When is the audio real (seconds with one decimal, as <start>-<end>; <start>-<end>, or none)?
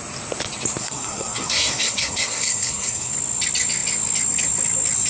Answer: 0.0-0.8; 3.1-5.1